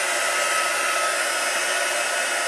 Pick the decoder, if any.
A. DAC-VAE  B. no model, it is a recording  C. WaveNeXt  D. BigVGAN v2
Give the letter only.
B